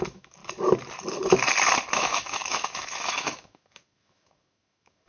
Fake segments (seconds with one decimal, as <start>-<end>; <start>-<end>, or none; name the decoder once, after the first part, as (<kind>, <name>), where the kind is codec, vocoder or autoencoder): 0.0-0.4 (autoencoder, DAC-VAE); 1.9-5.1